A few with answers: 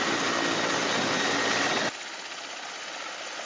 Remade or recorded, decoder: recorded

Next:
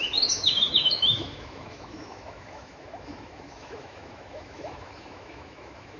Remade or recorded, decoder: remade, autoencoder, DAC-VAE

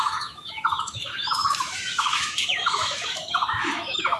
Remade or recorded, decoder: remade, autoencoder, DAC-VAE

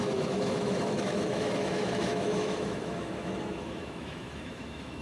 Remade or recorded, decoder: remade, autoencoder, DAC-VAE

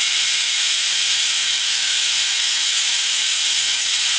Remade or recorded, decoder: remade, autoencoder, DAC-VAE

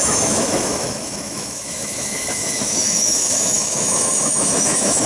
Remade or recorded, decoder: remade, autoencoder, DAC-VAE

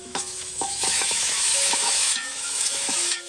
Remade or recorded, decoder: remade, autoencoder, DAC-VAE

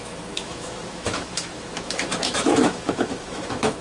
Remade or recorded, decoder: remade, autoencoder, DAC-VAE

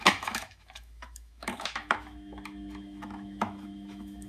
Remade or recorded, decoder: remade, autoencoder, DAC-VAE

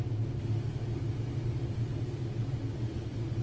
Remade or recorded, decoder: recorded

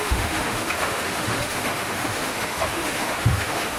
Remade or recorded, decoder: remade, autoencoder, DAC-VAE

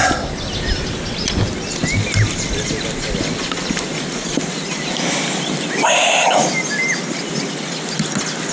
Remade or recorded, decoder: recorded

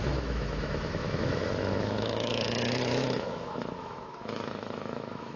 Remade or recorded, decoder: remade, autoencoder, DAC-VAE